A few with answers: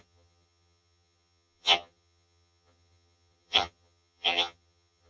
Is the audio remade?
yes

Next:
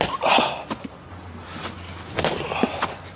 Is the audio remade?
no